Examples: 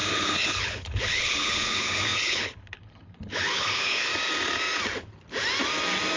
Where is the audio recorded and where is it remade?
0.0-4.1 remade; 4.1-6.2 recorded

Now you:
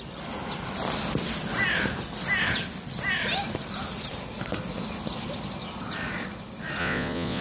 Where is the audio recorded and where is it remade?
0.0-6.8 recorded; 6.8-7.4 remade

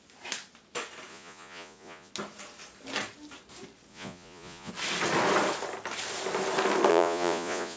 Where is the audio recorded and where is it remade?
0.0-1.1 recorded; 1.1-2.1 remade; 2.1-3.9 recorded; 3.9-4.7 remade; 4.7-6.9 recorded; 6.9-7.8 remade